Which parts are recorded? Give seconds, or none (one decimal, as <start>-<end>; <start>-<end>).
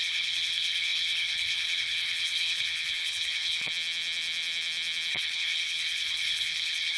3.7-5.1